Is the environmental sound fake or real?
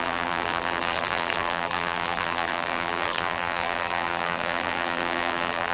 fake